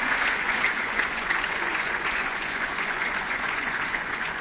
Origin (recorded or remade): remade